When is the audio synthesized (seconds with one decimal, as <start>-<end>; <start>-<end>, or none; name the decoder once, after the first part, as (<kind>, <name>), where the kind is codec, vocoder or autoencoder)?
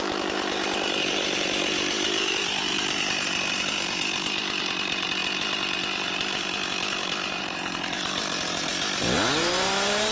0.0-8.7 (vocoder, BigVGAN v2); 9.4-10.1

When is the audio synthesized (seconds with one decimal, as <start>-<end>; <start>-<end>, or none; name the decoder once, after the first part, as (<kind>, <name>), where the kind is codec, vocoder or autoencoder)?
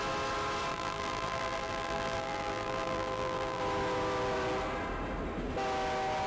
0.7-3.6 (vocoder, BigVGAN v2)